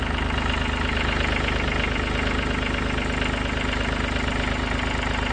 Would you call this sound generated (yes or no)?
no